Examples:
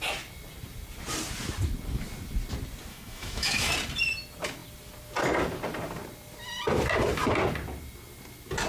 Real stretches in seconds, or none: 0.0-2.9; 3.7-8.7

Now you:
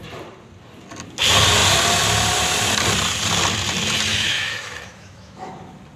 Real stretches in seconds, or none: 0.0-4.1; 5.5-6.0

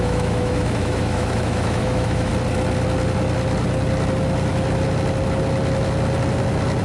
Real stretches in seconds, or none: 2.3-6.8

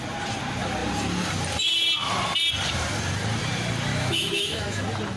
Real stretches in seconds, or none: 0.0-3.9; 4.8-5.2

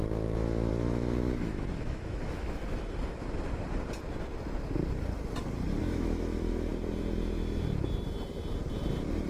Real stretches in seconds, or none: 0.0-0.7; 2.6-5.8; 6.7-9.3

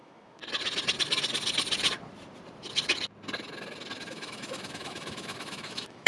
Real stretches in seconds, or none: 0.4-4.1

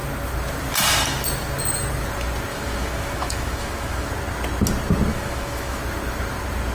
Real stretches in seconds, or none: 0.0-2.5; 4.1-5.1; 5.8-6.7